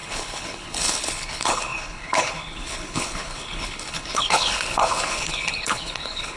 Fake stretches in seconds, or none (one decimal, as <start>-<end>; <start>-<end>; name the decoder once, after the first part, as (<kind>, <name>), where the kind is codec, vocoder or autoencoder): 0.0-6.4 (codec, HILCodec)